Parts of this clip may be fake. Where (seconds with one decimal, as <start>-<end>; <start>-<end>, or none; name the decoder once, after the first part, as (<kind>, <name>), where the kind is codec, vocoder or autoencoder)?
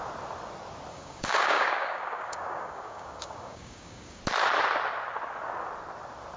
0.9-4.2 (codec, DAC)